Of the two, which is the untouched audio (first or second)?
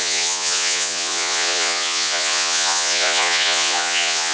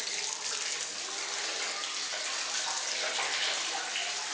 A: second